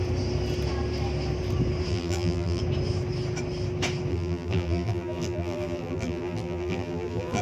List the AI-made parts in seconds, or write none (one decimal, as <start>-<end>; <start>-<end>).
1.9-2.6; 4.1-7.4